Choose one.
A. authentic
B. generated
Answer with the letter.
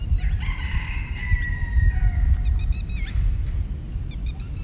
A